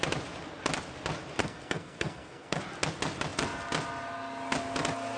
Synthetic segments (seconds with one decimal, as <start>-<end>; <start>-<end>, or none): 1.4-2.6

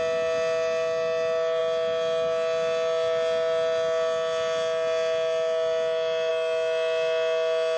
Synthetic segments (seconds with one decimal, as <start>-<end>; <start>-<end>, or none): none

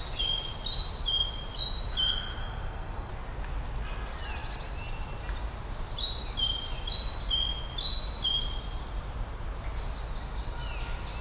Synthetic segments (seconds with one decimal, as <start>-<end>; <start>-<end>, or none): 2.4-3.1

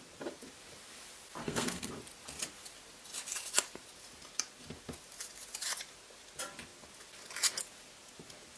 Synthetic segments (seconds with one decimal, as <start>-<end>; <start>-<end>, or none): 1.4-1.9

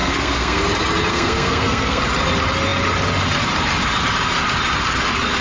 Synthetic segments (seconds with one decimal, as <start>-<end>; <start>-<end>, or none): 0.0-0.6; 1.1-2.0